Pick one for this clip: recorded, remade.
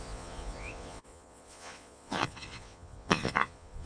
remade